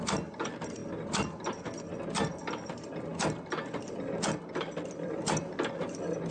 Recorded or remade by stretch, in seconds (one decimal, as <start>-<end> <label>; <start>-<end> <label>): 0.0-6.3 recorded